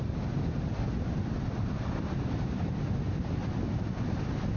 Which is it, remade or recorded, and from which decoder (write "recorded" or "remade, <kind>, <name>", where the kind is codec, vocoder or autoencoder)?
recorded